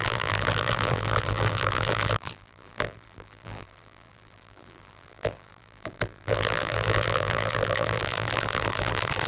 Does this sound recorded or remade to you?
remade